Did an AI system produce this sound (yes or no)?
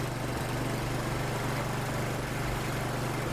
no